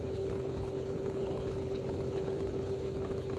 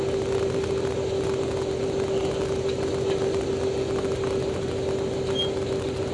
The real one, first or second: second